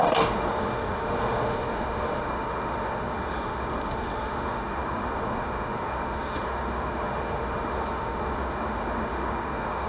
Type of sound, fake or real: fake